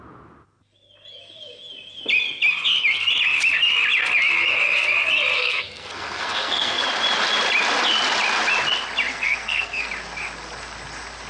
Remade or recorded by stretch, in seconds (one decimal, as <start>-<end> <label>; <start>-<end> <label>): 0.0-5.3 recorded; 5.3-6.8 remade; 6.8-9.1 recorded; 9.1-9.9 remade; 9.9-11.3 recorded